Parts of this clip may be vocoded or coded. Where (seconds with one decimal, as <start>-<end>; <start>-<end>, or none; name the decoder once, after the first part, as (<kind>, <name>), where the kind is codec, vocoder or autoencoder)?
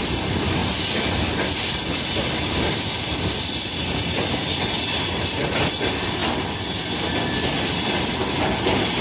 none